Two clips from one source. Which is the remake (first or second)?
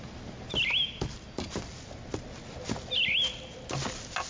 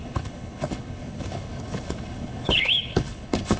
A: second